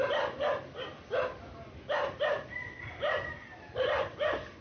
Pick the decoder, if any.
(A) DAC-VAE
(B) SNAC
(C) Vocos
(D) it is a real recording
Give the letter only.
D